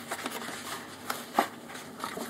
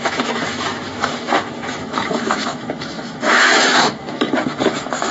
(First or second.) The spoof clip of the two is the second